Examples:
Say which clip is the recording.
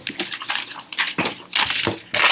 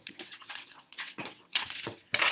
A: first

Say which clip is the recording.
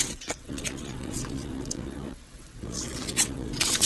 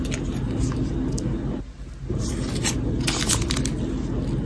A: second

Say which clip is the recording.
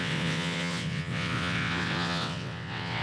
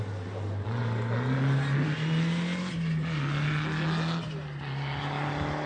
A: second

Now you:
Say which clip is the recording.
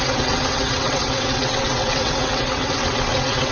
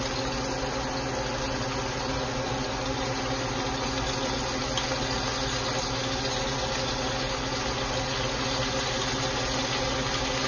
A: second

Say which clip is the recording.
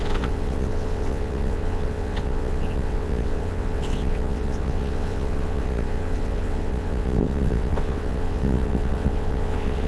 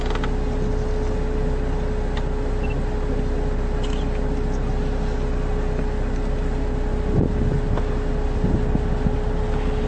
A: second